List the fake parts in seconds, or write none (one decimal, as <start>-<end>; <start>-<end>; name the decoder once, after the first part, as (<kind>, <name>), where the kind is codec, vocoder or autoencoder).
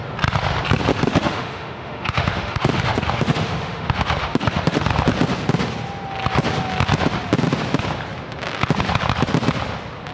0.9-4.9 (autoencoder, DAC-VAE)